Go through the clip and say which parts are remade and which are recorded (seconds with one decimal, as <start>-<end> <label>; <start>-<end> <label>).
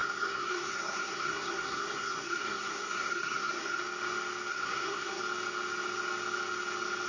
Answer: 0.0-3.8 remade; 3.8-4.5 recorded; 4.5-5.2 remade; 5.2-7.1 recorded